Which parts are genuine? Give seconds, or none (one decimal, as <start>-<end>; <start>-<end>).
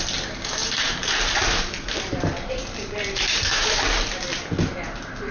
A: 0.0-0.6; 3.8-5.3